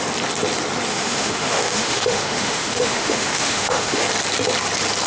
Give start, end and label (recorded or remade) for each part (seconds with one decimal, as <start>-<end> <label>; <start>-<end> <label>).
0.0-0.9 recorded; 0.9-4.0 remade; 4.0-5.1 recorded